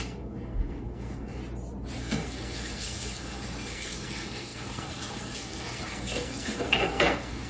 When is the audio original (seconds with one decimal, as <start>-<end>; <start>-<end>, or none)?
1.4-2.0